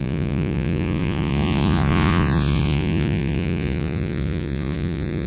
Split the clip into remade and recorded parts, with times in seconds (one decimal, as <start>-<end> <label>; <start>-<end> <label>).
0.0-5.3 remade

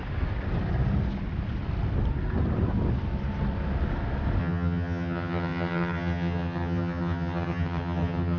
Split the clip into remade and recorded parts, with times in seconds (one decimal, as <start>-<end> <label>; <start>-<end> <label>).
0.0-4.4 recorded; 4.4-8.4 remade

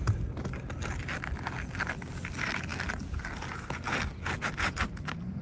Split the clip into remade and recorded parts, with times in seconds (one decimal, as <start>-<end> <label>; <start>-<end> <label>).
0.0-5.4 recorded

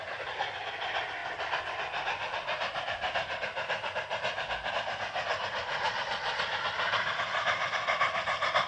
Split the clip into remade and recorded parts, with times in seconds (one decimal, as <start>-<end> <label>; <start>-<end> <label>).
0.0-5.6 recorded; 5.6-6.4 remade; 6.4-8.7 recorded